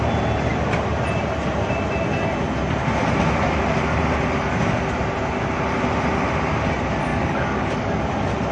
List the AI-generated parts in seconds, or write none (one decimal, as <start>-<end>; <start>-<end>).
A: 7.1-8.0